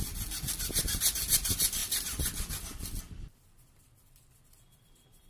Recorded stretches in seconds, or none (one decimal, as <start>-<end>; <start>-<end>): 0.0-1.8; 2.5-5.3